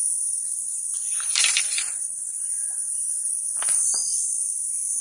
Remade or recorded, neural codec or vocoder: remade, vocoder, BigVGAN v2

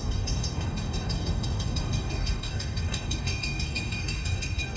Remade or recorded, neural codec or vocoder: remade, codec, DAC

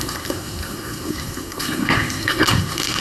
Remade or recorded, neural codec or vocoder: remade, codec, SNAC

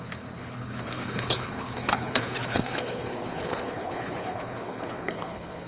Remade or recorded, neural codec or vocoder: remade, codec, HILCodec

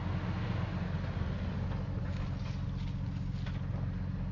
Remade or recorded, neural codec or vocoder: recorded